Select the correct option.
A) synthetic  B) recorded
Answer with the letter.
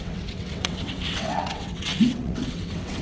A